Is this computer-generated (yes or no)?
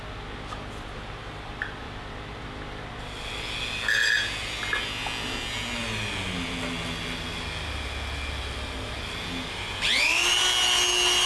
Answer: no